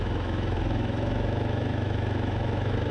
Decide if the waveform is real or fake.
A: fake